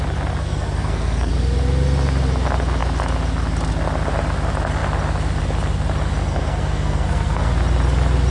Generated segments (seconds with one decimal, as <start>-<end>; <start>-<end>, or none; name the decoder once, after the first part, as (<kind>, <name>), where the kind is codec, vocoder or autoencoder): 0.4-1.3 (codec, SNAC); 6.3-7.5